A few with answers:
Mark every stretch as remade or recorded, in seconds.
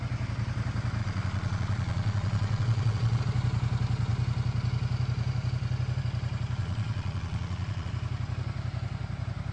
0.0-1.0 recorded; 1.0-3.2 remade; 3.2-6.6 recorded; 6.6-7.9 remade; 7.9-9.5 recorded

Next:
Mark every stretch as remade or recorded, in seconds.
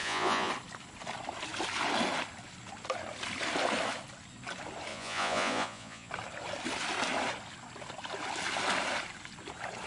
0.0-0.5 remade; 0.5-4.9 recorded; 4.9-6.1 remade; 6.1-9.9 recorded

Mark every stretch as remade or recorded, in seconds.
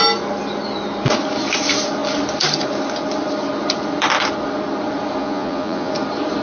0.0-5.2 recorded; 5.2-5.9 remade; 5.9-6.4 recorded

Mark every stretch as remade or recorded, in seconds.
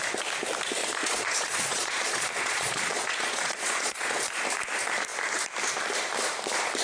0.0-0.8 recorded; 0.8-4.4 remade; 4.4-6.8 recorded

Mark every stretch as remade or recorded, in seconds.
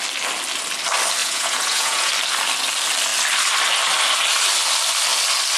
0.0-1.2 recorded; 1.2-2.1 remade; 2.1-5.6 recorded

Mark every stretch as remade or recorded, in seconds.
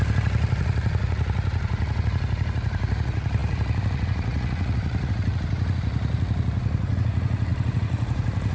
0.0-8.5 remade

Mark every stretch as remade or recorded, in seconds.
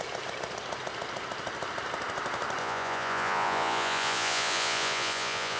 0.0-2.6 recorded; 2.6-5.6 remade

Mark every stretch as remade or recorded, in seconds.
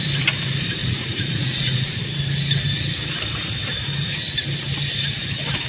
0.0-0.8 recorded; 0.8-2.0 remade; 2.0-5.7 recorded